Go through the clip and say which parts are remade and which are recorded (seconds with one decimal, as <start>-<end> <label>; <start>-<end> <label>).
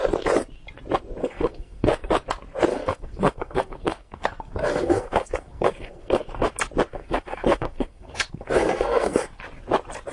0.0-1.2 recorded; 1.2-2.1 remade; 2.1-2.7 recorded; 2.7-6.5 remade; 6.5-6.9 recorded; 6.9-9.4 remade; 9.4-10.1 recorded